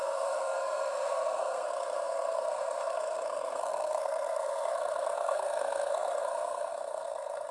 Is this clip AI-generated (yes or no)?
yes